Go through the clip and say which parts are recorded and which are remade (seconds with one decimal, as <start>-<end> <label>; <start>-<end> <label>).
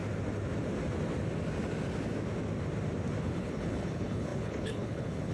0.0-3.2 recorded; 3.2-5.3 remade